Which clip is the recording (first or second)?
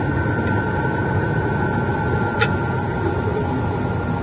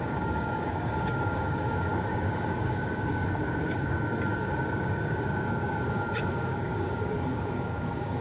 first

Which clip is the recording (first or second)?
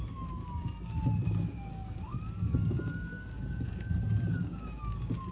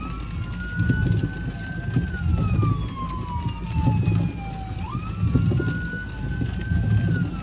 second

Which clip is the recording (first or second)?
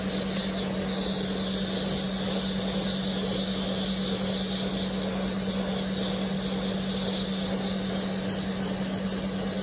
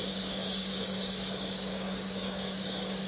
first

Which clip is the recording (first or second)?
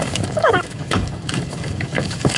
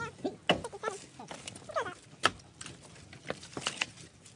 second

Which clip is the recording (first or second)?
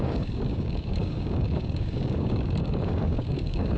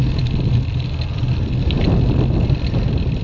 second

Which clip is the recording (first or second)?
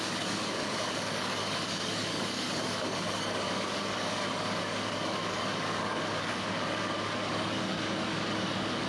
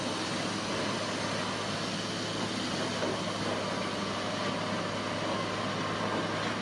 second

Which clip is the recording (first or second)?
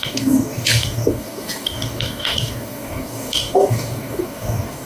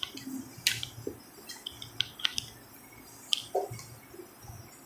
second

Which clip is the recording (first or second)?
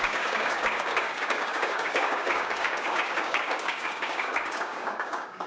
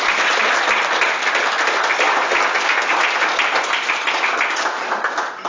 second